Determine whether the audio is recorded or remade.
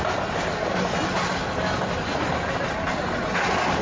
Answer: recorded